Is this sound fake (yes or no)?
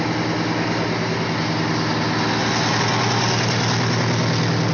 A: no